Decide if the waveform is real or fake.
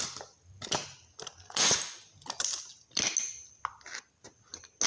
real